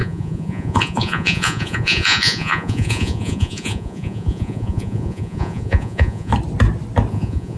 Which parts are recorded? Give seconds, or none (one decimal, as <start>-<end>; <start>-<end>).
6.3-7.1